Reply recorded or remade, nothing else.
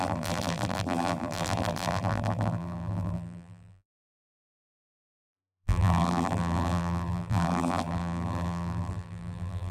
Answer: remade